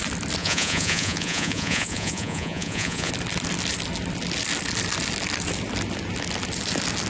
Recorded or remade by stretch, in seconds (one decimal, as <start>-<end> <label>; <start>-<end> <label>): 0.0-0.4 recorded; 0.4-3.1 remade; 3.1-7.1 recorded